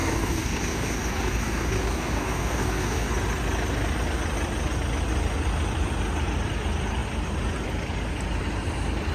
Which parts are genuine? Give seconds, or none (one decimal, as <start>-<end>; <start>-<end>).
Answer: 3.1-9.1